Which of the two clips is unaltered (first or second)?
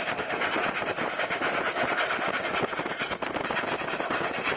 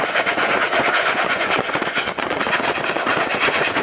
first